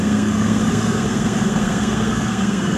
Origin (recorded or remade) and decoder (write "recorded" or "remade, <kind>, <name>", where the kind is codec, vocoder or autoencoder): remade, codec, SNAC